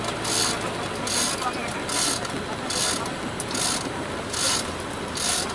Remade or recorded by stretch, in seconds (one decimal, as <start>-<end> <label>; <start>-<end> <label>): 0.0-5.5 recorded